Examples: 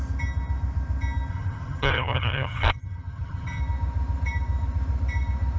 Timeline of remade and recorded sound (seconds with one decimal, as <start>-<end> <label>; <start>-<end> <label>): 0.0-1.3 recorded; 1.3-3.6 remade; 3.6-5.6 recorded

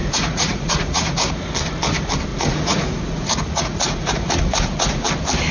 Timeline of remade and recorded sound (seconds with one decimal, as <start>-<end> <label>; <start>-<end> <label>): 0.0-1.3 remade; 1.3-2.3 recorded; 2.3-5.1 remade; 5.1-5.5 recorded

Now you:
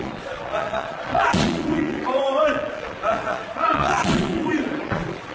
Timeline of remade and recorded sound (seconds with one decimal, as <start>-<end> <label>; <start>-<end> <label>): 0.0-5.3 remade